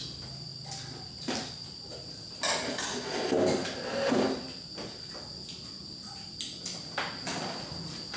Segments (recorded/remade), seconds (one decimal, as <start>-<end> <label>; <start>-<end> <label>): 0.0-8.2 recorded